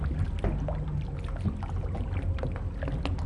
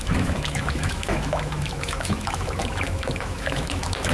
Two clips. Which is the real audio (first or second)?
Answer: first